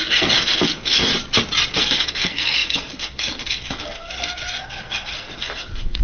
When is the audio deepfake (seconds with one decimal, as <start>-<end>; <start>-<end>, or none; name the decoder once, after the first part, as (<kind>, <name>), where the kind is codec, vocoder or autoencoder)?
0.0-1.1 (codec, SNAC); 1.7-6.0